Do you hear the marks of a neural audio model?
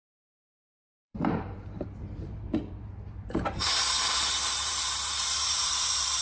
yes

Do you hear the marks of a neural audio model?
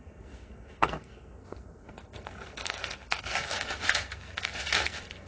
yes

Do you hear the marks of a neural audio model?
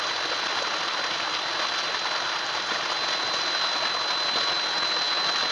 no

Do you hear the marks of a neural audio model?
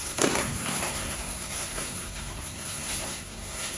yes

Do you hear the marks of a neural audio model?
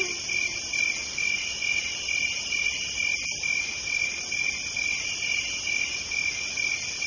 no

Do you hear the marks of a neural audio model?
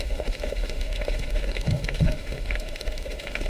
yes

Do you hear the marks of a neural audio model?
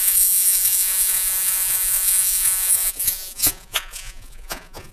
yes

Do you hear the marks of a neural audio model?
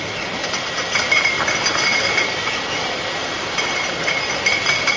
yes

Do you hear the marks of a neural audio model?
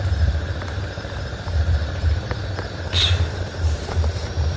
yes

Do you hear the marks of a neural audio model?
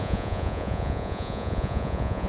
yes